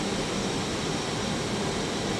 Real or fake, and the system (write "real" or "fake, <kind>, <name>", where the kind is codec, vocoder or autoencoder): real